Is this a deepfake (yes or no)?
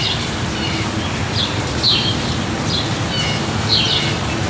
no